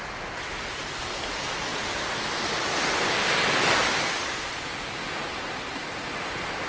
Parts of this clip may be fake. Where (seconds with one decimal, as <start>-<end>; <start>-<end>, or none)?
none